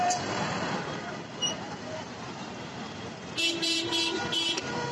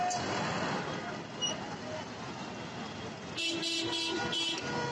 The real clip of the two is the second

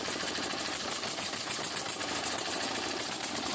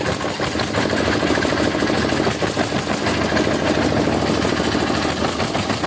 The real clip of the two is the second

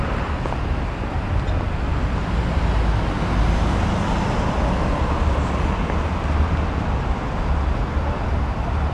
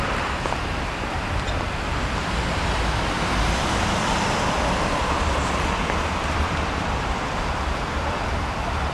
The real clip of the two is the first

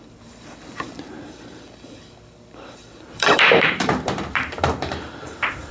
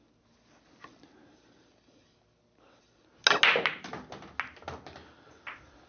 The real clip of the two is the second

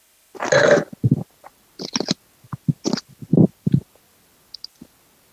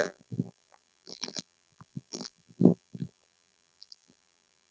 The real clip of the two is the first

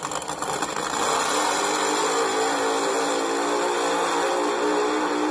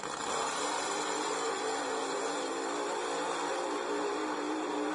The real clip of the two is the first